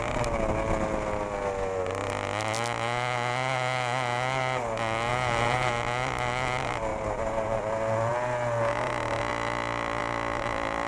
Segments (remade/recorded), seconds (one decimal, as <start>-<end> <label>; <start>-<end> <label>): 0.0-5.1 recorded; 5.1-5.7 remade; 5.7-6.9 recorded; 6.9-7.6 remade; 7.6-10.9 recorded